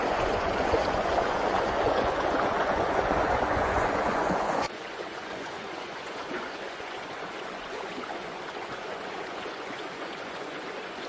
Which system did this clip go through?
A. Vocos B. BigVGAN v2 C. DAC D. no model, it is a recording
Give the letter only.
A